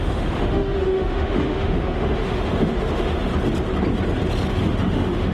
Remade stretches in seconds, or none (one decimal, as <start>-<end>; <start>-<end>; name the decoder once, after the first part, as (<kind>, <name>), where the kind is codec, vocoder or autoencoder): 0.0-3.3 (autoencoder, DAC-VAE); 4.5-5.3